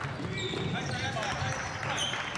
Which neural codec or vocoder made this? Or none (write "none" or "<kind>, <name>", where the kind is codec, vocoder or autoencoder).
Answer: none